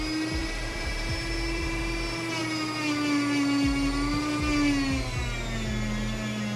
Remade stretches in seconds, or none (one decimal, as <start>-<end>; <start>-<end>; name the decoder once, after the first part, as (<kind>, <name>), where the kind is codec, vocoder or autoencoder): 0.4-1.8 (vocoder, BigVGAN v2)